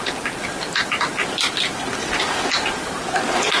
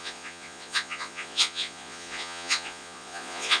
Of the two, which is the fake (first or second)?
second